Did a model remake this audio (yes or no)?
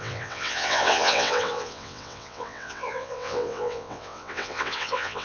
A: yes